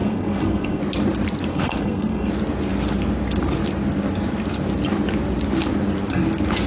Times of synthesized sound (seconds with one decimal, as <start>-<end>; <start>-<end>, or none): 0.0-0.8; 1.5-2.3